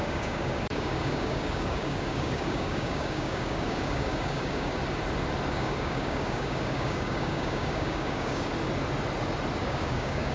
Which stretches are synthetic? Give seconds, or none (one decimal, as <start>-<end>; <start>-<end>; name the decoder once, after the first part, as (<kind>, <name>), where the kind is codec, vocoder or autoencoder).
0.0-4.8 (codec, DAC); 5.5-8.5; 9.6-10.3